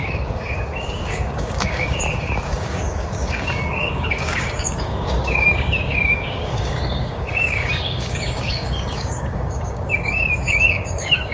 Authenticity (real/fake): fake